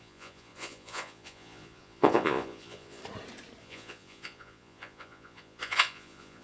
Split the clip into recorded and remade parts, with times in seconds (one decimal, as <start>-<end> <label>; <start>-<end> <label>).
0.0-3.0 remade; 3.0-3.6 recorded; 3.6-6.4 remade

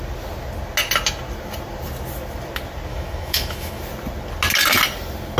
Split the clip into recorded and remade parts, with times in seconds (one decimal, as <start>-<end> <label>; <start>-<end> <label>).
0.0-2.9 recorded; 2.9-3.8 remade; 3.8-5.4 recorded

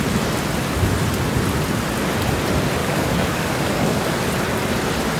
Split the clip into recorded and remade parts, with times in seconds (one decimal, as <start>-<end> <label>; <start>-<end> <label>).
0.0-2.8 recorded; 2.8-4.2 remade; 4.2-5.2 recorded

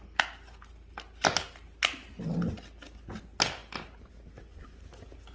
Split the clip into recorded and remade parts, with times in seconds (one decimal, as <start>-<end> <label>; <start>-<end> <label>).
0.0-5.3 recorded

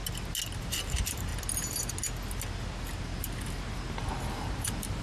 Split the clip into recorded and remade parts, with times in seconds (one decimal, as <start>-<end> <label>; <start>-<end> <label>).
0.0-0.6 recorded; 0.6-1.3 remade; 1.3-4.3 recorded; 4.3-5.0 remade

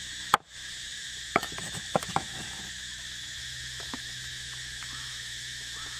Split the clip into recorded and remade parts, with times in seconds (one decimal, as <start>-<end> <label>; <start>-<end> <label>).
0.0-6.0 remade

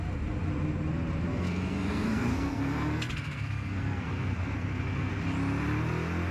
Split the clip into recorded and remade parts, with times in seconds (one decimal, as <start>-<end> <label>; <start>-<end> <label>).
0.0-1.3 recorded; 1.3-5.1 remade; 5.1-6.3 recorded